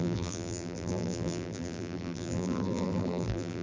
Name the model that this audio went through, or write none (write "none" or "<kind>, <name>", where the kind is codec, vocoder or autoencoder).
vocoder, BigVGAN v2